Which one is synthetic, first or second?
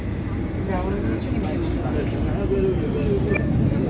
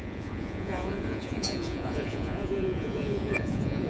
second